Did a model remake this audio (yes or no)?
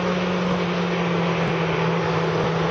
no